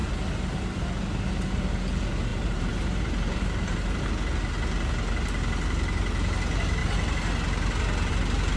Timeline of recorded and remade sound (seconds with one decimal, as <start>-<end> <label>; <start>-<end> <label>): 0.0-2.3 recorded; 2.3-4.1 remade; 4.1-8.6 recorded